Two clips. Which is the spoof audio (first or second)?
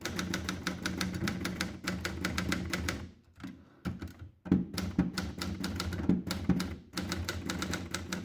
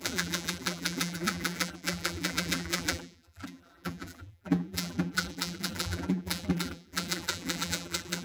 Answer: second